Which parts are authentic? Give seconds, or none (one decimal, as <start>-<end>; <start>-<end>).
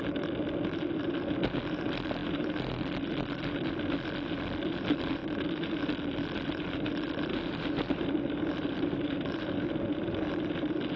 0.0-2.2; 2.7-7.3; 10.0-11.0